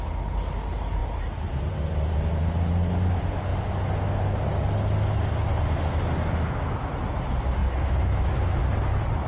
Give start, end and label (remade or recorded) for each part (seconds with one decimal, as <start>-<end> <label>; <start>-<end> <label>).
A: 0.0-7.6 recorded; 7.6-8.6 remade; 8.6-9.3 recorded